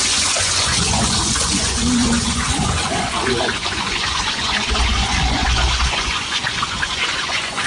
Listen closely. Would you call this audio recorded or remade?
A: remade